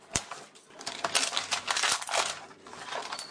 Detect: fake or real real